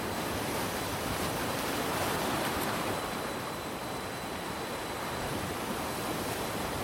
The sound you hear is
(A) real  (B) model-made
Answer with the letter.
B